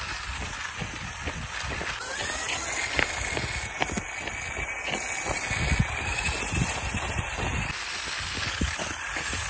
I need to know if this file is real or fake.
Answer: real